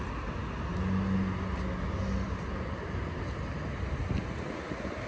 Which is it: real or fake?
real